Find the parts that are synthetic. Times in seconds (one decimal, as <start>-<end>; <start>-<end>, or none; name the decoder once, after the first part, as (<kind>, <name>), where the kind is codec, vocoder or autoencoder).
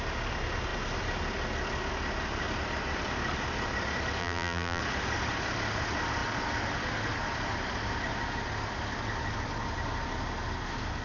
4.2-4.8 (vocoder, BigVGAN v2)